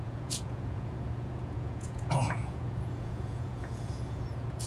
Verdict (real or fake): fake